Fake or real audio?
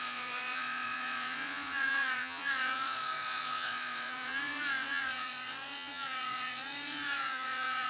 fake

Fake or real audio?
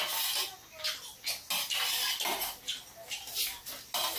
real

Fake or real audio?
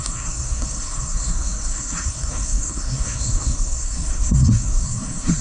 fake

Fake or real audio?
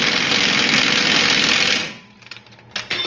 real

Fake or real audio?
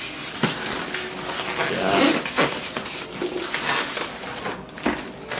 real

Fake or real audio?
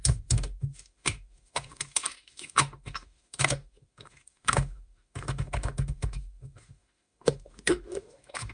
fake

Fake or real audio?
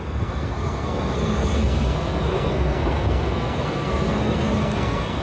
fake